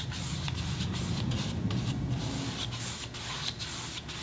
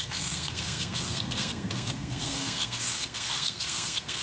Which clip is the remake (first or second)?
second